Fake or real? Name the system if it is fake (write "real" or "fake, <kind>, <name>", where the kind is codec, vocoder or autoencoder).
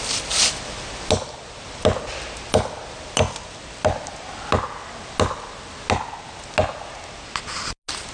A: real